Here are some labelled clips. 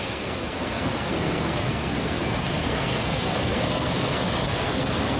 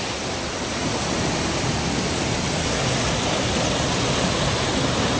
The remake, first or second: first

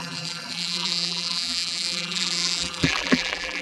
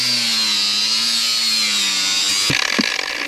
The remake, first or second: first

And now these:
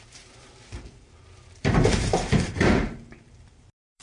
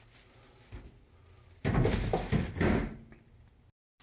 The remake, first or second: first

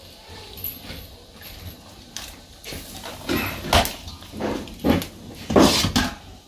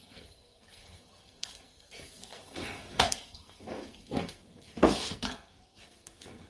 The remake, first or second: second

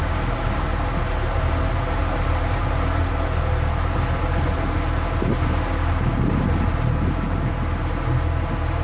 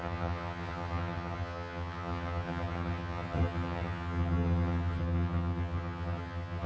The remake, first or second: second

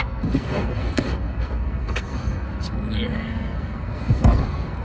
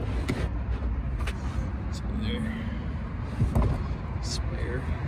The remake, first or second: first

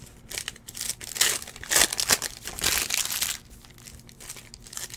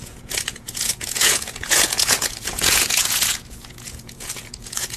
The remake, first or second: second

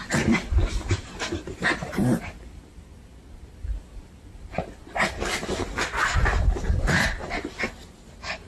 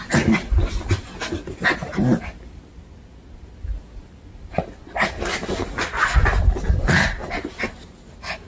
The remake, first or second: first